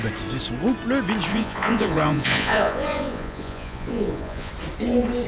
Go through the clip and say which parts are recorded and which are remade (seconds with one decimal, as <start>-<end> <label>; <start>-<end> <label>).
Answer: 0.0-1.3 recorded; 1.3-4.5 remade; 4.5-5.3 recorded